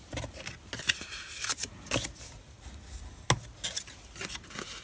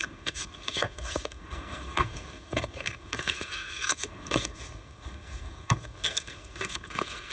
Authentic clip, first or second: first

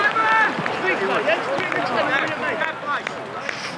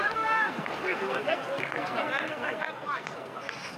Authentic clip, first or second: first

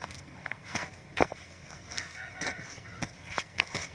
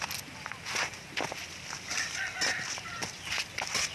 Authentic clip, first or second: second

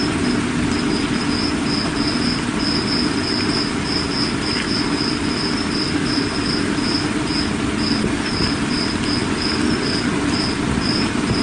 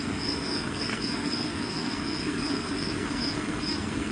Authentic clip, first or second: first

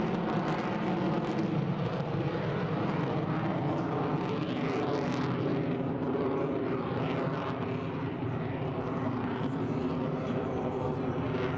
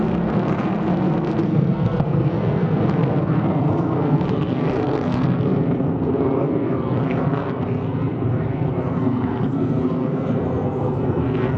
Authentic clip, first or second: first